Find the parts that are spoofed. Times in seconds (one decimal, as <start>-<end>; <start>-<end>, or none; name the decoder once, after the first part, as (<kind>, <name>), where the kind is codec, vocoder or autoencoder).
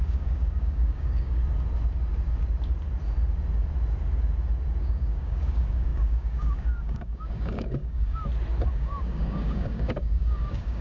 0.0-1.4 (codec, DAC); 4.8-8.2; 8.7-10.8